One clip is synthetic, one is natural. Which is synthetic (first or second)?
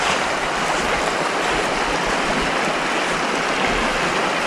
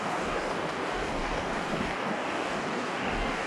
second